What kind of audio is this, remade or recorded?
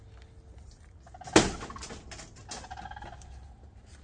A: recorded